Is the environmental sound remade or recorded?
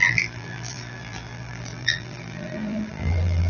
remade